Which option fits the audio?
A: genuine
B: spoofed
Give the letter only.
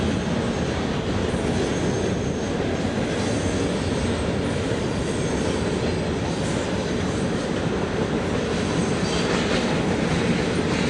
A